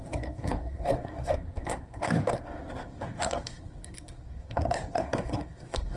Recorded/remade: remade